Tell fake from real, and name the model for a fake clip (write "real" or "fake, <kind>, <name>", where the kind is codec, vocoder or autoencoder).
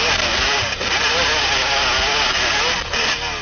real